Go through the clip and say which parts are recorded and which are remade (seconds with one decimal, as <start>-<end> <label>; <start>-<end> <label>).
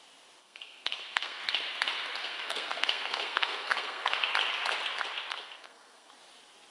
0.0-0.4 recorded; 0.4-1.4 remade; 1.4-2.2 recorded; 2.2-4.3 remade; 4.3-5.3 recorded; 5.3-6.1 remade; 6.1-6.7 recorded